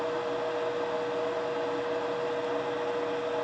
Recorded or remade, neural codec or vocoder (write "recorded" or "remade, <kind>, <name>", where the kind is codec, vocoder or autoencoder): recorded